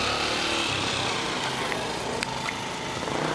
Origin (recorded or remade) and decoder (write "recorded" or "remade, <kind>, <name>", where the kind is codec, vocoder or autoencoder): recorded